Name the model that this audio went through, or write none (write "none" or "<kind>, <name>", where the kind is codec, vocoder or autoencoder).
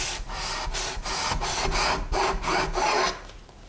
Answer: none